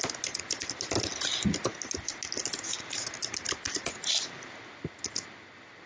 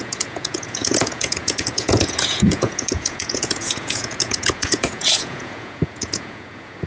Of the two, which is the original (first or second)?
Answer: first